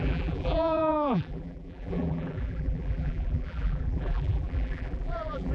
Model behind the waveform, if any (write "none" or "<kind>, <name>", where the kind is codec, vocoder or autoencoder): vocoder, BigVGAN v2